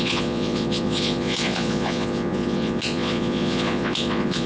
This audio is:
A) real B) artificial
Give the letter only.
B